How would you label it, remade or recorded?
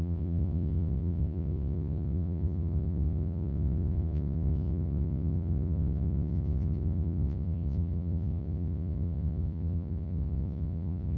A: remade